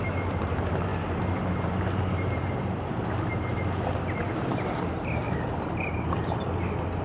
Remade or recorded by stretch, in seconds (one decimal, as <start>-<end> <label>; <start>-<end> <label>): 0.0-0.9 recorded; 0.9-4.0 remade; 4.0-5.2 recorded; 5.2-6.4 remade; 6.4-7.0 recorded